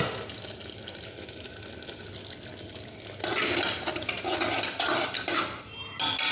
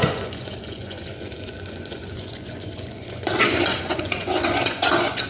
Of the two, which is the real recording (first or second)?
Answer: first